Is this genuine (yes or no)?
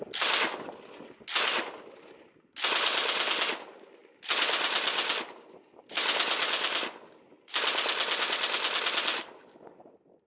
yes